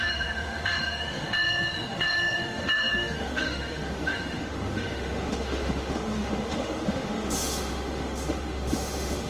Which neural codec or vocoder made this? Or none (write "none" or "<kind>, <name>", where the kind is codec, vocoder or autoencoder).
autoencoder, DAC-VAE